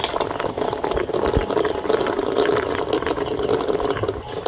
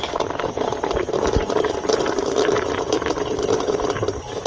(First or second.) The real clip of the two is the first